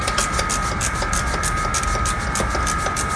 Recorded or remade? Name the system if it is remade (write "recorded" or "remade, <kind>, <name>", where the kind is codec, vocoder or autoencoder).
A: recorded